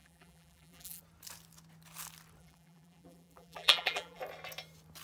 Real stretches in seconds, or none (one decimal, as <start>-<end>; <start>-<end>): 1.0-2.4; 4.2-5.0